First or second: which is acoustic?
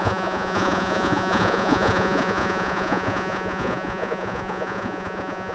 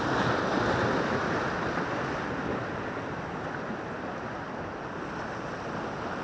second